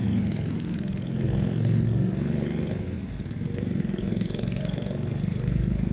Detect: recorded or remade remade